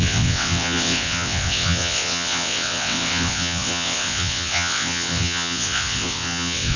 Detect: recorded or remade remade